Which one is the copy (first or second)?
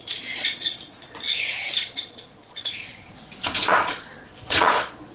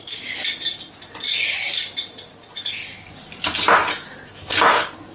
first